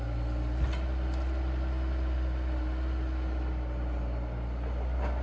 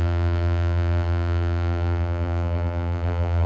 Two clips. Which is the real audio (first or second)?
first